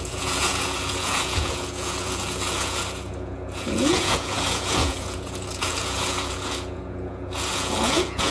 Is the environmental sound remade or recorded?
remade